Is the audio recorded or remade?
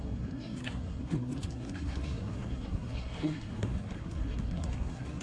remade